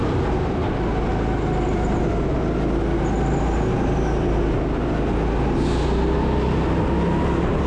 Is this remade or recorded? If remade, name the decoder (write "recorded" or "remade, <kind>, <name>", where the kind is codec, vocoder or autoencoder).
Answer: recorded